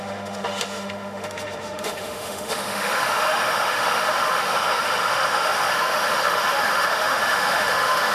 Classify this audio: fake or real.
fake